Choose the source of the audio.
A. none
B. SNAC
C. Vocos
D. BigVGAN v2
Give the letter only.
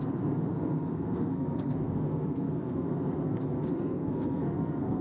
B